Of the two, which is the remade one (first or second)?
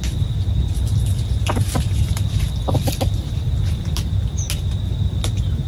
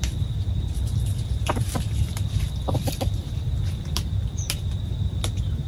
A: second